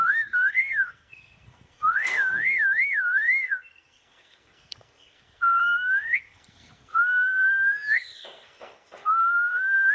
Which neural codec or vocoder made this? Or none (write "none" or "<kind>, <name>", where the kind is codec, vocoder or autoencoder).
codec, SNAC